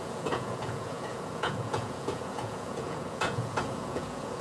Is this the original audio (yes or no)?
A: no